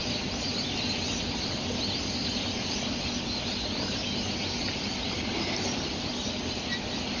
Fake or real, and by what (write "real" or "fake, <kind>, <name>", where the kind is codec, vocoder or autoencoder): real